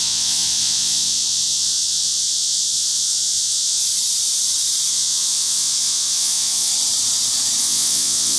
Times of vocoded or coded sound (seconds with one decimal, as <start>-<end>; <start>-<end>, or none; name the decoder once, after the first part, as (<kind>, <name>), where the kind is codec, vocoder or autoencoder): 0.0-3.8 (vocoder, Vocos); 4.9-6.7; 7.6-8.4